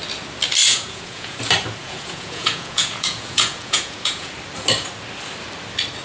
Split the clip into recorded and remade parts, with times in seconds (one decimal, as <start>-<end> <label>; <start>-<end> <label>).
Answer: 0.0-0.6 recorded; 0.6-1.4 remade; 1.4-1.8 recorded; 1.8-4.3 remade; 4.3-6.0 recorded